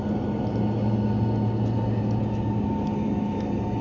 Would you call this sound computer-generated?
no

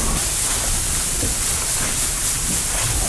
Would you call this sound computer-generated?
yes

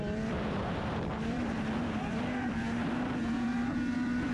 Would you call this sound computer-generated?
yes